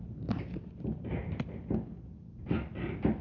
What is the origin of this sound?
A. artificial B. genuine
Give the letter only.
B